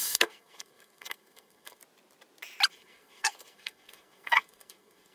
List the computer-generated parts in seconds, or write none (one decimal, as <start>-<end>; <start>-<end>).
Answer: 0.0-1.8; 2.7-5.1